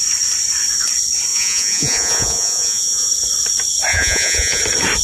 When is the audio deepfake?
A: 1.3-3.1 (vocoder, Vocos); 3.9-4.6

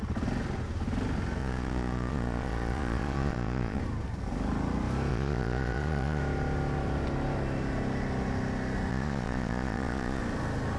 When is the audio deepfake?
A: 1.4-3.8 (vocoder, Vocos); 5.1-6.2; 8.9-10.2

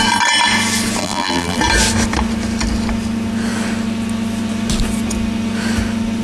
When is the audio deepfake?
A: 1.0-1.6 (vocoder, BigVGAN v2)

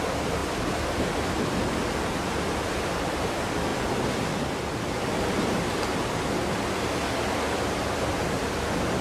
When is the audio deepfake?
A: none

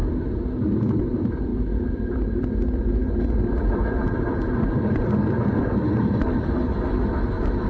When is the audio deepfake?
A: 1.5-2.5 (vocoder, BigVGAN v2); 3.0-7.7

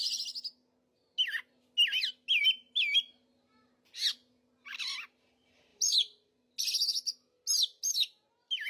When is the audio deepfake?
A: 5.7-6.5 (vocoder, BigVGAN v2)

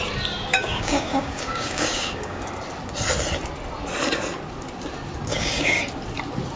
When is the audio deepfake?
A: 0.5-2.4 (codec, DAC); 5.3-5.8

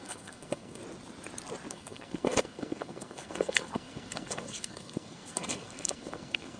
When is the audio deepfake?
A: 0.0-0.8 (codec, SNAC); 1.7-6.6